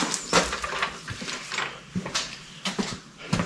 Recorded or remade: recorded